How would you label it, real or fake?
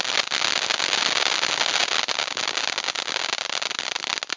real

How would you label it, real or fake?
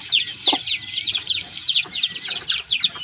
real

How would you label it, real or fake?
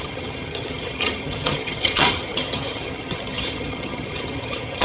fake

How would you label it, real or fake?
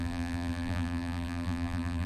fake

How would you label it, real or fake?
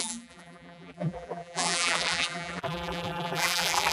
fake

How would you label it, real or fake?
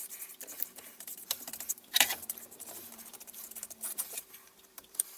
fake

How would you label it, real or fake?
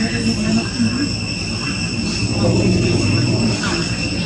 real